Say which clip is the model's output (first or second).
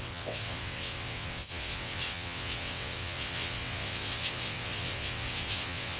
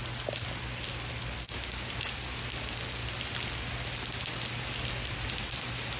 first